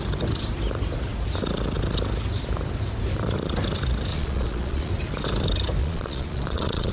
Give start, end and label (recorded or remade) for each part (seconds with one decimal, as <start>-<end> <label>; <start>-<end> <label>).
0.0-4.1 recorded; 4.1-4.9 remade; 4.9-5.8 recorded; 5.8-6.9 remade